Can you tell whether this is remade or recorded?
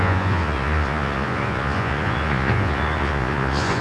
remade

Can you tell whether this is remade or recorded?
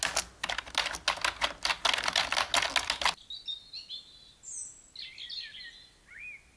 recorded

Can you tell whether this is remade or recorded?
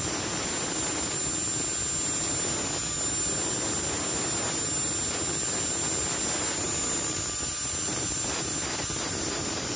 recorded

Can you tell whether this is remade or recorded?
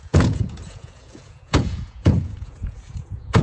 remade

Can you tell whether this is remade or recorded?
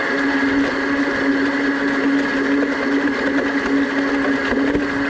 recorded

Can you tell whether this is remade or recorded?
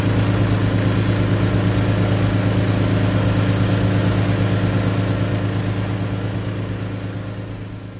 recorded